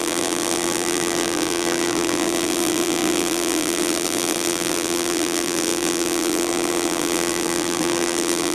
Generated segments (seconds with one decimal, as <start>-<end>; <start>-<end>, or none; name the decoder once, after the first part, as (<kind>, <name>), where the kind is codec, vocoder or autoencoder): 0.0-8.5 (vocoder, BigVGAN v2)